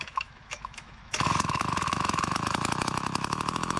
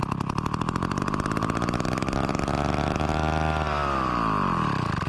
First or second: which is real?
second